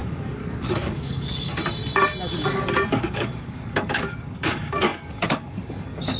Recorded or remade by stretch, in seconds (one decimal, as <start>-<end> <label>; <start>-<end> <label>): 0.0-1.5 remade; 1.5-2.9 recorded; 2.9-6.2 remade